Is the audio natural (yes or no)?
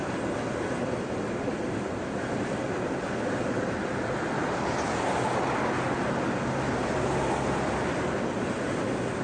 yes